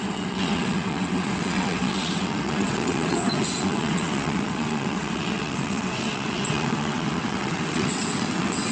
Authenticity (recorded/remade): remade